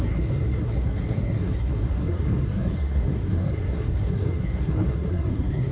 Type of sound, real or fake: fake